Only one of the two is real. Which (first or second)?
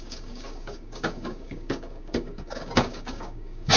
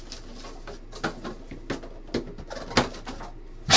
second